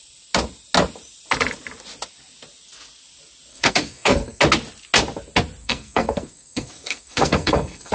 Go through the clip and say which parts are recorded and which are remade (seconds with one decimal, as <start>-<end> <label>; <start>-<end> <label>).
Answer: 0.0-3.5 recorded; 3.5-4.4 remade; 4.4-5.6 recorded; 5.6-7.9 remade